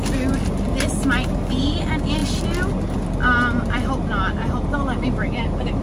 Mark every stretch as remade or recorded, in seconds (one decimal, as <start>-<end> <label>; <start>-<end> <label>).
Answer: 0.0-5.8 recorded

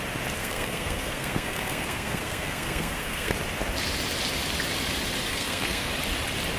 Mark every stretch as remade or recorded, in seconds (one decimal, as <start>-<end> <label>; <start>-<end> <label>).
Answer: 0.0-0.4 recorded; 0.4-3.3 remade; 3.3-5.3 recorded; 5.3-5.9 remade; 5.9-6.6 recorded

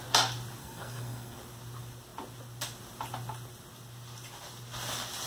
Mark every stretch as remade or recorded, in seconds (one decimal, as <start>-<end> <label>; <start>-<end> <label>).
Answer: 0.0-0.6 recorded; 0.6-1.4 remade; 1.4-5.3 recorded

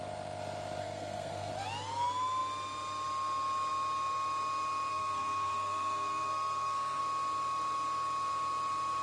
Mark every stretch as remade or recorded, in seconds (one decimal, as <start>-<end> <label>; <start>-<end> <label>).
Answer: 0.0-0.8 recorded; 0.8-1.5 remade; 1.5-4.9 recorded; 4.9-7.0 remade; 7.0-9.0 recorded

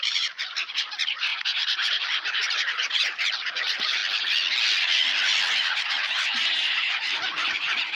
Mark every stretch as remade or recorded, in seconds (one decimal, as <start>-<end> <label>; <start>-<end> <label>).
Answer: 0.0-4.0 remade; 4.0-5.7 recorded; 5.7-7.9 remade

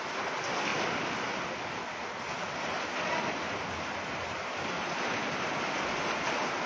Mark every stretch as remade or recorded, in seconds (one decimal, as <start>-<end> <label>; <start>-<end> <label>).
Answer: 0.0-6.7 recorded

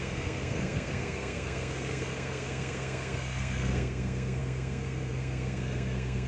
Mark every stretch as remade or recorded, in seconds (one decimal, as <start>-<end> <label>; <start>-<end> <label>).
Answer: 0.0-6.3 remade

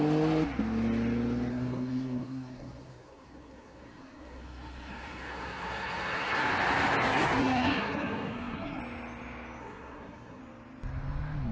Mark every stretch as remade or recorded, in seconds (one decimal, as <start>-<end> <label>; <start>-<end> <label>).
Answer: 0.0-1.5 recorded; 1.5-6.5 remade; 6.5-7.0 recorded; 7.0-8.8 remade; 8.8-9.6 recorded; 9.6-10.4 remade; 10.4-11.5 recorded